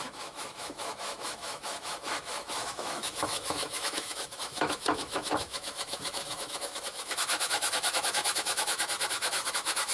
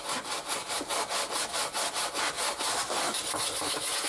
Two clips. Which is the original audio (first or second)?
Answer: second